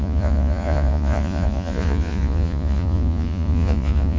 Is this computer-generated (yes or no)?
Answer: yes